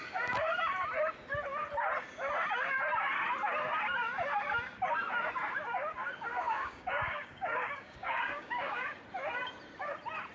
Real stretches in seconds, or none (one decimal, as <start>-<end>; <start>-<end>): 0.0-6.3; 8.9-10.3